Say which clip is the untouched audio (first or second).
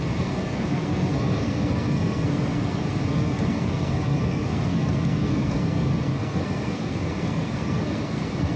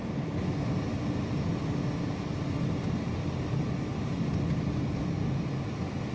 second